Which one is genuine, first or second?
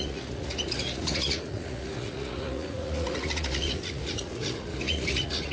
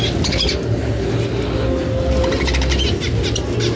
second